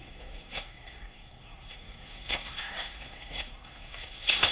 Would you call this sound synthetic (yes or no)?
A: yes